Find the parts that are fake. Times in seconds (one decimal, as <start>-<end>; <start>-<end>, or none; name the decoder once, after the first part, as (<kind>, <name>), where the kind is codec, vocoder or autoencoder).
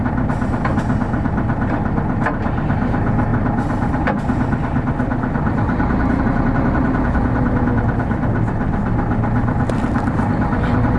none